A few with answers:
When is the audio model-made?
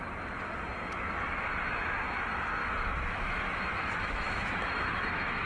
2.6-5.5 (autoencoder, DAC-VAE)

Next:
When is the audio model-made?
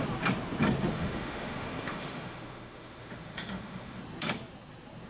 0.9-4.0 (autoencoder, DAC-VAE)